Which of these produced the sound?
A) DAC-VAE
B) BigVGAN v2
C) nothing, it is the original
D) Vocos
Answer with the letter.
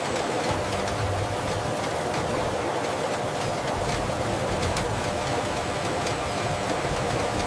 C